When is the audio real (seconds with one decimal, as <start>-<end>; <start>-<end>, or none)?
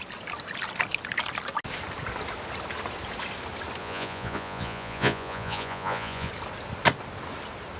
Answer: 0.0-3.8; 6.3-7.8